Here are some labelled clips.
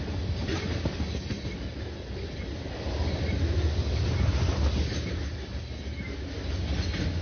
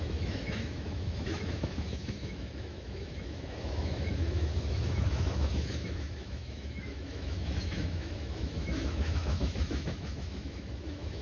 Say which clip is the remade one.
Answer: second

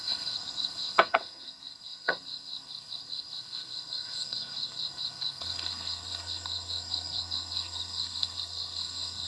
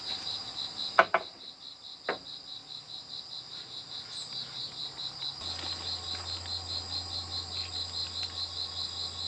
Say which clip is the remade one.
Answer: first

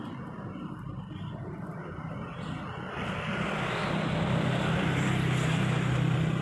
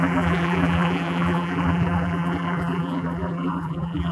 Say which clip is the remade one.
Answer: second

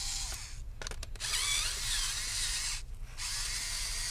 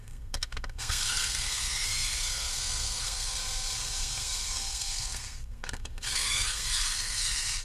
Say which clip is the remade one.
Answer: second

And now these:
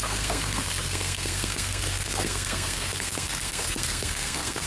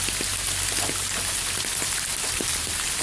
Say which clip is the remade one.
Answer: first